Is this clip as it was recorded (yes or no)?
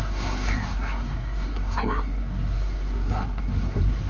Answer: no